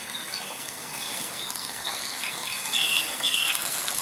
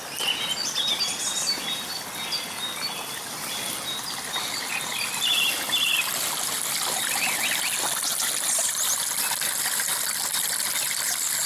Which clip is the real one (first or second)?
second